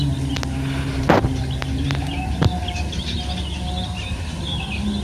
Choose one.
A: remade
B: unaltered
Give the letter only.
B